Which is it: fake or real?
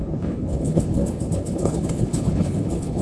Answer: fake